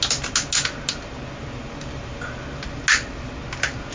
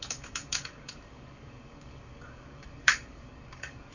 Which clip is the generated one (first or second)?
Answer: second